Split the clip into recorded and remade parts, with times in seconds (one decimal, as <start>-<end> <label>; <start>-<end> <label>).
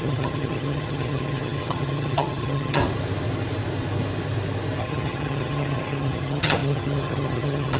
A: 0.0-2.8 remade; 2.8-4.8 recorded; 4.8-7.8 remade